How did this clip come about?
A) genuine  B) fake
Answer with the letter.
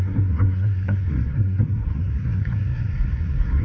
B